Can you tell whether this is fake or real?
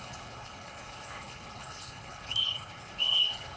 fake